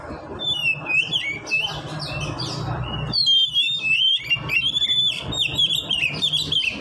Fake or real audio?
fake